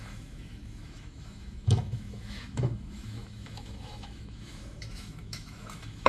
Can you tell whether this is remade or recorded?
remade